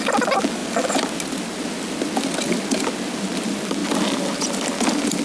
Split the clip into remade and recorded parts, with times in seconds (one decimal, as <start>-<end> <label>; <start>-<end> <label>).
0.0-5.2 recorded

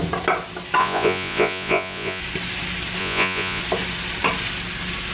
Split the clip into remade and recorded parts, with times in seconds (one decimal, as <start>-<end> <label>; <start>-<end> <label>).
0.0-0.8 recorded; 0.8-2.2 remade; 2.2-3.0 recorded; 3.0-3.6 remade; 3.6-5.1 recorded

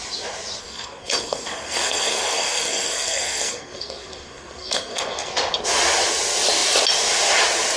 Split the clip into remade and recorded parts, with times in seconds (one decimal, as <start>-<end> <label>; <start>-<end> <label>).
0.0-0.6 recorded; 0.6-5.3 remade; 5.3-7.8 recorded